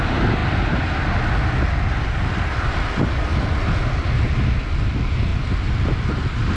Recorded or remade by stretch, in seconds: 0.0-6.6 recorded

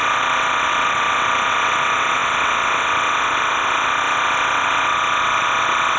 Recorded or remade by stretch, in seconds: 0.0-6.0 remade